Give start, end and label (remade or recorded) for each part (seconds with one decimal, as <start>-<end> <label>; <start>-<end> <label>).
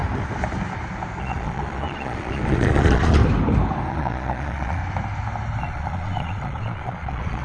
0.0-1.2 recorded; 1.2-3.2 remade; 3.2-3.9 recorded; 3.9-4.8 remade; 4.8-5.6 recorded; 5.6-7.4 remade